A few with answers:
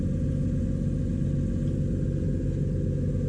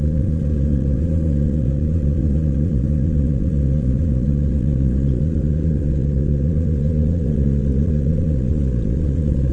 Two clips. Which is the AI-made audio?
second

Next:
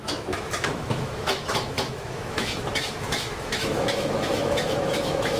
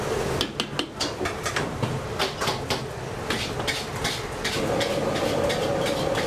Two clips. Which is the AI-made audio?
first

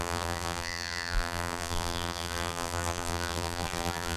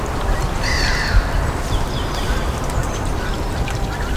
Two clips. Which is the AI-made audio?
first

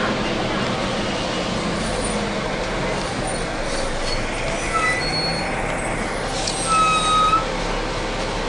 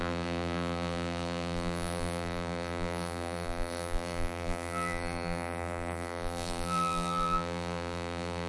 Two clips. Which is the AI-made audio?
second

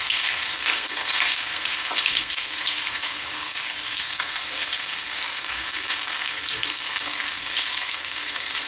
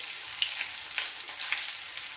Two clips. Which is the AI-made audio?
first